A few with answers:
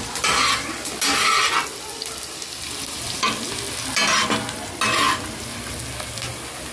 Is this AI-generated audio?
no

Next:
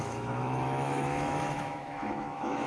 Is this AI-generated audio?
yes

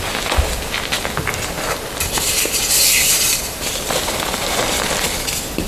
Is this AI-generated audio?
no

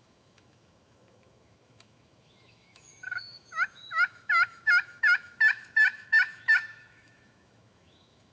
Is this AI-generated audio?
yes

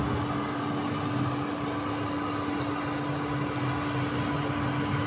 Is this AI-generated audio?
no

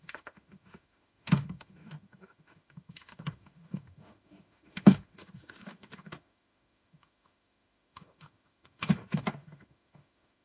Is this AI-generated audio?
yes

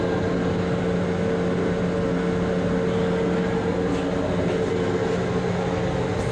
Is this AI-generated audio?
no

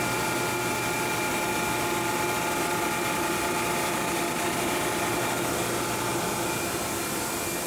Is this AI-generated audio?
no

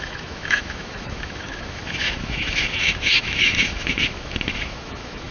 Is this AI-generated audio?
yes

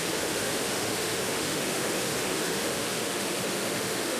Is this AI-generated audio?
yes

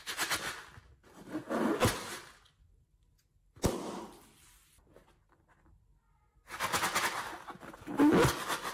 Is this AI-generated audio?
no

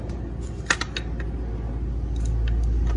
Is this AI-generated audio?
no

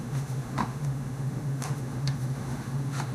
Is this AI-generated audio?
yes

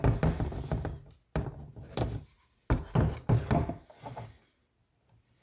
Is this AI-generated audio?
no